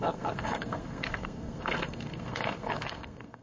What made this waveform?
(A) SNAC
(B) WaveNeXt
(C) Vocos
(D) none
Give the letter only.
A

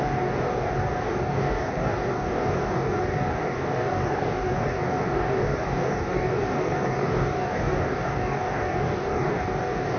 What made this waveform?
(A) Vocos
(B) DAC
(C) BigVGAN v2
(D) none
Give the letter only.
B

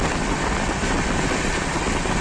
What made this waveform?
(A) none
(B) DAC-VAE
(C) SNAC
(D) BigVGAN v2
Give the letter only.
A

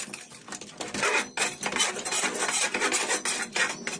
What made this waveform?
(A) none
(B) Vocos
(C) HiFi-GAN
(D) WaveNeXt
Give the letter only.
A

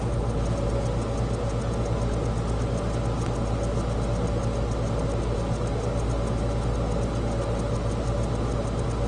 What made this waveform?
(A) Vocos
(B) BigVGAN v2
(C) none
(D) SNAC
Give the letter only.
C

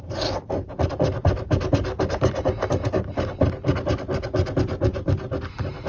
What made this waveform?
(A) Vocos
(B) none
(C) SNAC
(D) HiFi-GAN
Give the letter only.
B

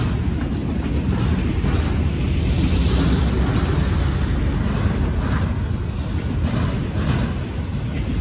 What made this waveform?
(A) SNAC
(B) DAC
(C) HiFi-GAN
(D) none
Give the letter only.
D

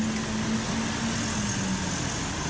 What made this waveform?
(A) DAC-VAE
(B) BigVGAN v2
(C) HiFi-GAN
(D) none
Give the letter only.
D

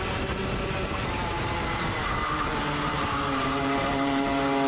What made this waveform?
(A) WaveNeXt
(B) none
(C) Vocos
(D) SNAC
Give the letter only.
B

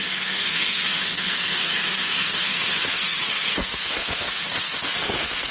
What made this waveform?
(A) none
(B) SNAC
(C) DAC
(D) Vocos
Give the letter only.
B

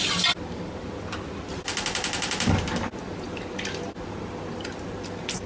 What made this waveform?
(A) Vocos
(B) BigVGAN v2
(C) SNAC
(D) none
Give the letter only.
D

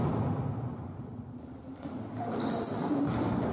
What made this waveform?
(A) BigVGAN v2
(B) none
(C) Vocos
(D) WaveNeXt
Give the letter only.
B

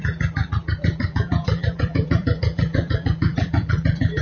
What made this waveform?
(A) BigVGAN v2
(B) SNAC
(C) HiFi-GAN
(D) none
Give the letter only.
A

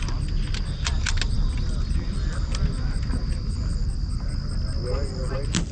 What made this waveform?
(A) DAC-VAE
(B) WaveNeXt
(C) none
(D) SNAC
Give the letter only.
C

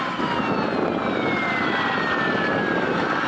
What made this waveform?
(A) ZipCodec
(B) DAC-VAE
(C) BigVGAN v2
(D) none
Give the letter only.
D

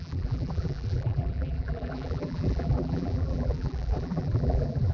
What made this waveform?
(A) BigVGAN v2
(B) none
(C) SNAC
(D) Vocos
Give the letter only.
A